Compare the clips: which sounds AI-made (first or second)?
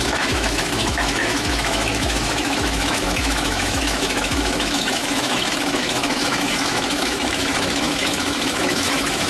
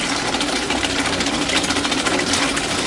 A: first